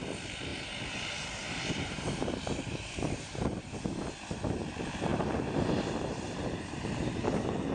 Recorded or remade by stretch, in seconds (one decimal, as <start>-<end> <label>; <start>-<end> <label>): 0.0-0.5 recorded; 0.5-4.0 remade; 4.0-5.1 recorded; 5.1-7.7 remade